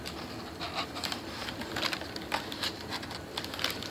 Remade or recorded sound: recorded